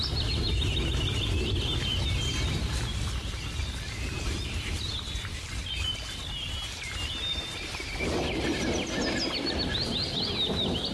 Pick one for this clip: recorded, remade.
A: recorded